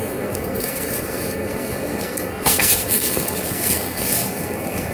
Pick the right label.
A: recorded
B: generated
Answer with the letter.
B